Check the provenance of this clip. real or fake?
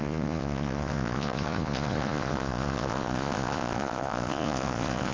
fake